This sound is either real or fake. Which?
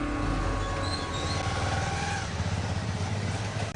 real